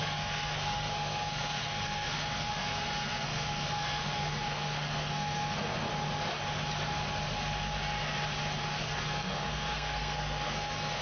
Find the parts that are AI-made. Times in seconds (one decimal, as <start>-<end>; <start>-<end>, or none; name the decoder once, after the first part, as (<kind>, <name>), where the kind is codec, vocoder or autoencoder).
0.0-5.9 (codec, SNAC); 8.8-11.0